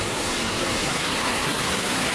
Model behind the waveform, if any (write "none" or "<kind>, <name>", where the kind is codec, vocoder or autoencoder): codec, SNAC